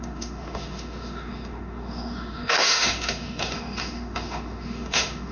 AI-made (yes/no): yes